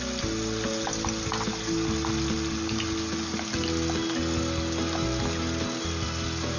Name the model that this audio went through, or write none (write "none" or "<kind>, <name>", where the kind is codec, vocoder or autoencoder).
none